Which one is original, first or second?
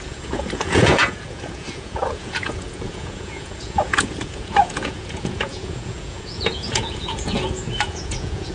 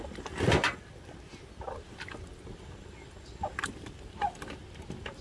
second